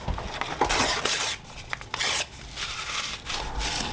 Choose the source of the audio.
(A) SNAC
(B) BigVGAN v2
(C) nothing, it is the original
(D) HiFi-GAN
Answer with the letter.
C